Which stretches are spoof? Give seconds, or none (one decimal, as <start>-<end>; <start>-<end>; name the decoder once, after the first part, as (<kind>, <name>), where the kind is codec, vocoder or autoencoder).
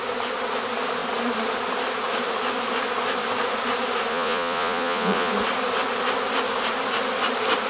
4.1-5.3 (vocoder, Vocos)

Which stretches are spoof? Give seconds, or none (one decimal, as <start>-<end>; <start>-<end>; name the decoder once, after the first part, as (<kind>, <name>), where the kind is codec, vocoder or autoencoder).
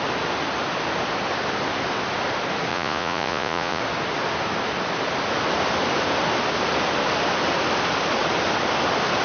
2.7-3.8 (vocoder, Vocos)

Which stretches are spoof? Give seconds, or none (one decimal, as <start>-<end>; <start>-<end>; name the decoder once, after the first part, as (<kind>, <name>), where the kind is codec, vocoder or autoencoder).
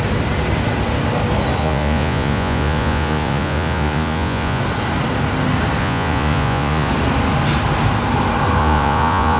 1.6-4.6 (vocoder, Vocos); 5.8-6.9; 8.6-9.4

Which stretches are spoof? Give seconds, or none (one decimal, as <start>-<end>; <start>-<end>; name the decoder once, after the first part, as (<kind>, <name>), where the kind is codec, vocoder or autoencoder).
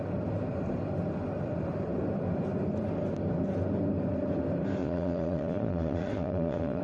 4.8-6.8 (vocoder, Vocos)